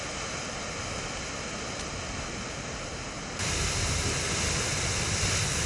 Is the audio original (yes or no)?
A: yes